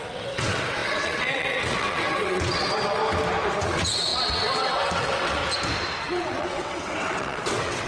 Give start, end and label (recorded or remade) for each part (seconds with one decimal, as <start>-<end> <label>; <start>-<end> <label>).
0.0-3.0 remade; 3.0-3.6 recorded; 3.6-5.4 remade; 5.4-6.0 recorded; 6.0-7.9 remade